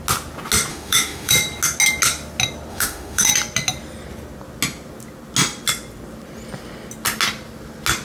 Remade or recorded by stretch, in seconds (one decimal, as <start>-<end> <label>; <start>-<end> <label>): 0.0-0.7 recorded; 0.7-1.3 remade; 1.3-2.7 recorded; 2.7-3.3 remade; 3.3-8.0 recorded